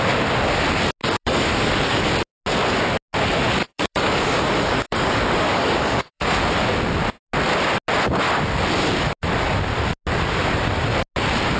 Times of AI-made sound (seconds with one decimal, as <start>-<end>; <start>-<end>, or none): 1.0-2.0; 3.6-6.3